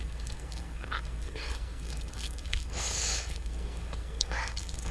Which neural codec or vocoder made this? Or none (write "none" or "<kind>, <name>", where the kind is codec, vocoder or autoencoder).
codec, SNAC